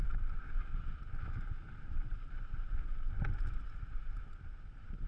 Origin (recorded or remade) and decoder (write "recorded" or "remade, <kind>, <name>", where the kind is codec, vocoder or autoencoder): recorded